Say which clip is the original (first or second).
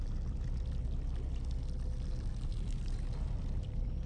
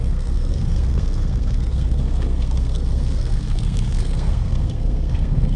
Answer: first